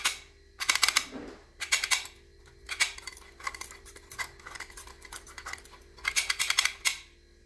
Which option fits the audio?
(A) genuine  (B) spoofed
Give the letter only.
A